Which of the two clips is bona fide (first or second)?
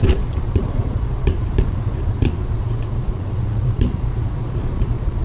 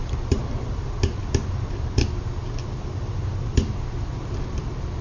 second